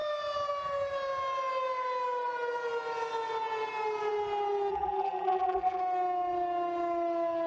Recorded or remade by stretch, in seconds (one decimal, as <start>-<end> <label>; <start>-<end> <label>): 0.0-4.7 recorded; 4.7-5.8 remade; 5.8-7.5 recorded